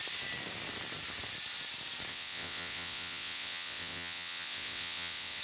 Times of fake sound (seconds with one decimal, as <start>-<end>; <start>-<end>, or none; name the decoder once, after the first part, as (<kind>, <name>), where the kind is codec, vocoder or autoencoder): 2.1-5.4 (vocoder, WaveNeXt)